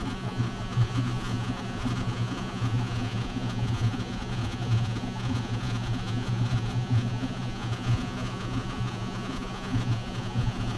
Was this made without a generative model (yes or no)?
no